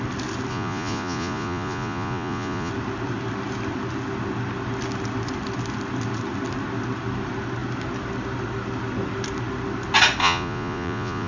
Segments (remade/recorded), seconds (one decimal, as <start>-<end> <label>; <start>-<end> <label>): 0.0-0.5 recorded; 0.5-2.7 remade; 2.7-10.2 recorded; 10.2-11.3 remade